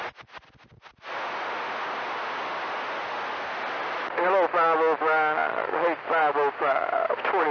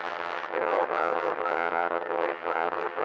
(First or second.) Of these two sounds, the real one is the first